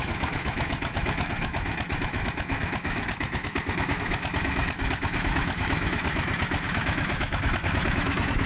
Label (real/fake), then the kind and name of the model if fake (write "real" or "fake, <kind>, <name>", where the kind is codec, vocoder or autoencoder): fake, autoencoder, DAC-VAE